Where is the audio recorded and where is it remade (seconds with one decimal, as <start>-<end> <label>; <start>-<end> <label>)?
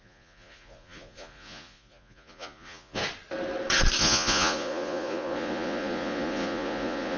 0.0-3.0 remade; 3.0-4.0 recorded; 4.0-7.2 remade